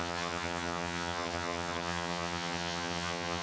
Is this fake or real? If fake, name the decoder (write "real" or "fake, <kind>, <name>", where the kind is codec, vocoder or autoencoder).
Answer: fake, vocoder, HiFi-GAN